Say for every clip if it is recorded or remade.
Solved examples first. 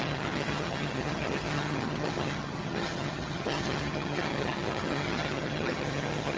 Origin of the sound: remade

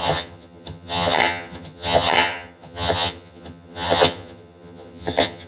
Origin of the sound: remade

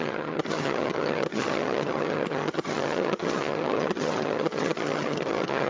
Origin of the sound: remade